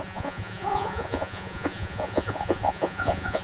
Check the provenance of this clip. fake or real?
fake